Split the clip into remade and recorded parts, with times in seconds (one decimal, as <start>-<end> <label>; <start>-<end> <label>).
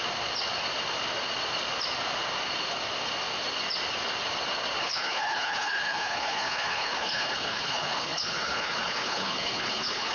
0.0-4.8 recorded; 4.8-10.1 remade